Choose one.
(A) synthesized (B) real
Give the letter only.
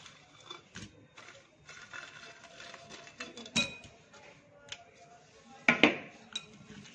B